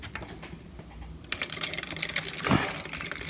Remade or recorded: recorded